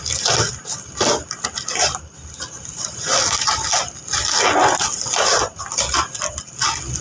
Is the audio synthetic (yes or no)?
no